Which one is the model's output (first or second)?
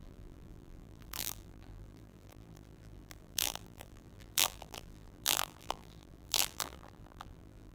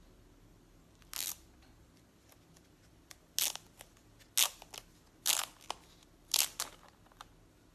first